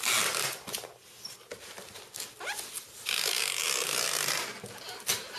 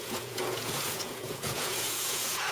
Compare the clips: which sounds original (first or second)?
first